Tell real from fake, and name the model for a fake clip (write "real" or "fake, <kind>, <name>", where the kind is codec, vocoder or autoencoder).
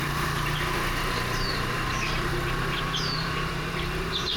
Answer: fake, vocoder, BigVGAN v2